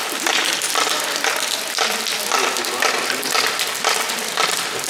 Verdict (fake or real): real